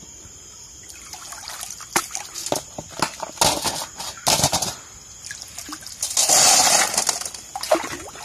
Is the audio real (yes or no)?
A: yes